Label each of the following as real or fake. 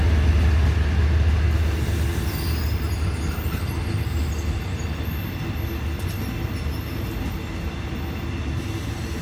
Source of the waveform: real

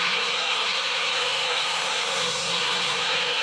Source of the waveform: fake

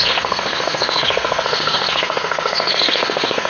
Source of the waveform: fake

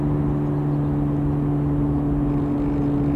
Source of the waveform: real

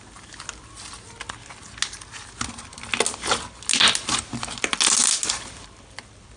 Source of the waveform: real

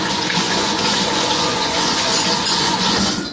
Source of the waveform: fake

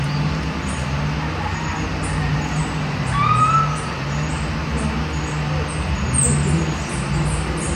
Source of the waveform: real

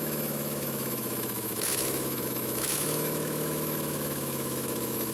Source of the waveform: fake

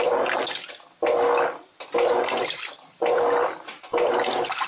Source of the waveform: real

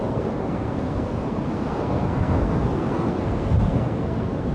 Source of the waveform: fake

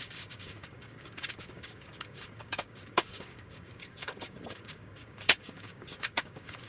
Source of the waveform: fake